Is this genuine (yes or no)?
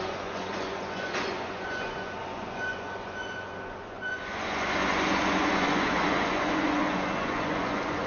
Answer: no